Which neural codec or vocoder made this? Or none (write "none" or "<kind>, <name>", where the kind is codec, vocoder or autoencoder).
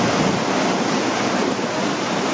none